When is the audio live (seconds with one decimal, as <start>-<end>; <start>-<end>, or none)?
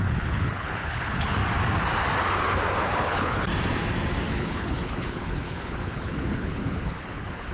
1.4-2.8; 3.5-4.3